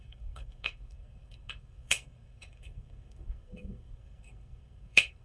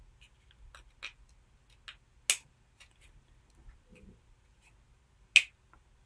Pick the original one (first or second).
second